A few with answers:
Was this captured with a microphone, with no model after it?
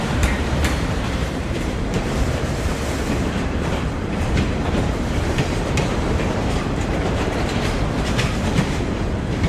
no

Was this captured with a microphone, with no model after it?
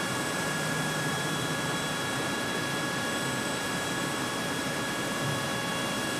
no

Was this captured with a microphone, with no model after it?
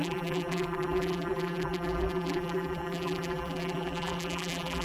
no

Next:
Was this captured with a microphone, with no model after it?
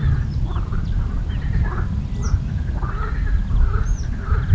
yes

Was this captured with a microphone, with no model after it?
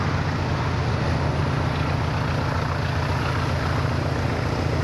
yes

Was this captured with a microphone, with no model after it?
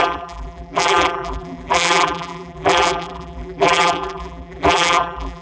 no